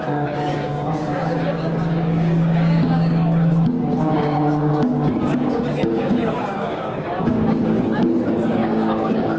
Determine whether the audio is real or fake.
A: fake